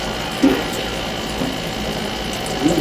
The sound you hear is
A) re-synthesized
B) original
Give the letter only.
B